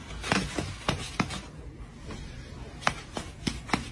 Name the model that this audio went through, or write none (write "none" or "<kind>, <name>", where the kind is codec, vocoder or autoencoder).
none